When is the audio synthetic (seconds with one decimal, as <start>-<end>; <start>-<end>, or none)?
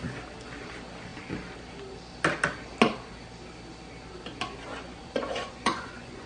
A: 4.7-6.3